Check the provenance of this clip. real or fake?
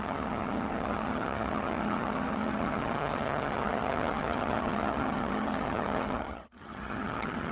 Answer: fake